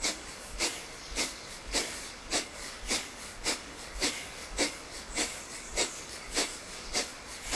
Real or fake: fake